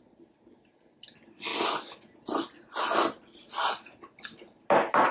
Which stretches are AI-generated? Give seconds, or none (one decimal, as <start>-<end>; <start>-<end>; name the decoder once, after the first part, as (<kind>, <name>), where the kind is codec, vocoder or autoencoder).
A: none